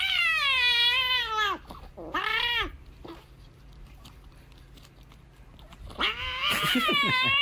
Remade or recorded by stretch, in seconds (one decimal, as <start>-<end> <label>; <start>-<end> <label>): 0.0-7.4 recorded